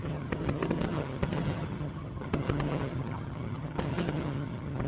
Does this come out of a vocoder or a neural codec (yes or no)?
yes